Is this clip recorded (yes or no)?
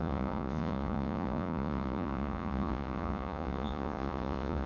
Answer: no